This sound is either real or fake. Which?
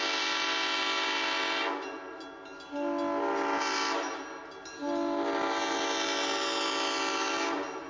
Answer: real